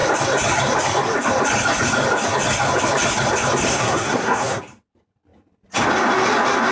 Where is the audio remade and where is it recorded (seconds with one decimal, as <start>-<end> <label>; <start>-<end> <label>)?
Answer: 0.0-3.7 recorded; 3.7-4.6 remade; 4.6-6.7 recorded